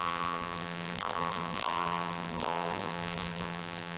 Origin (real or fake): fake